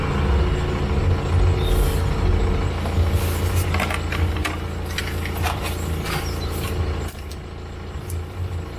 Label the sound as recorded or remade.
recorded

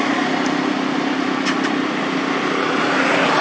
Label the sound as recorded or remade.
recorded